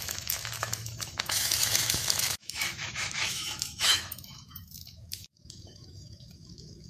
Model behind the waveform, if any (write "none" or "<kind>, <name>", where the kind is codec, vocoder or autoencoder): autoencoder, DAC-VAE